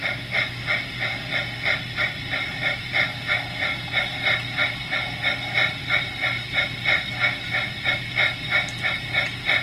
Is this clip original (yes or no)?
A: yes